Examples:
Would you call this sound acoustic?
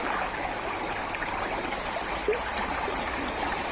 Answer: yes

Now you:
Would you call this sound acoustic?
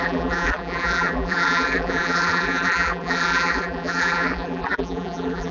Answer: no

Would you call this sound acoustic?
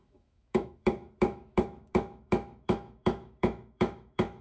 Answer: no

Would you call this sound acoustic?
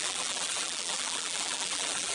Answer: no